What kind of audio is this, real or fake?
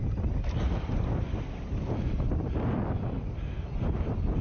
real